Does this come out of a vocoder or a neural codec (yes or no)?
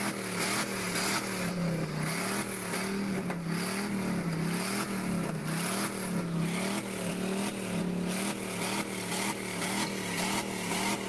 no